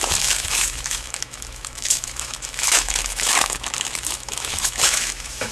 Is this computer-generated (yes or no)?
yes